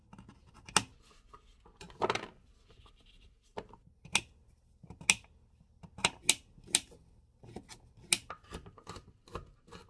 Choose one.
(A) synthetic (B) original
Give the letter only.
B